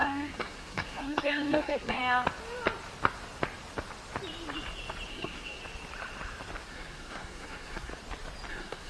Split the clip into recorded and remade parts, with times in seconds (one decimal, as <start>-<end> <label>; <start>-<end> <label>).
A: 0.0-2.0 remade; 2.0-5.1 recorded; 5.1-5.6 remade; 5.6-6.7 recorded; 6.7-7.9 remade; 7.9-8.5 recorded; 8.5-8.9 remade